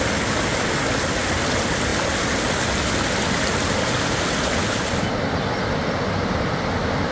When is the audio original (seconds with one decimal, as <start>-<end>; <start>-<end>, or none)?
0.0-7.1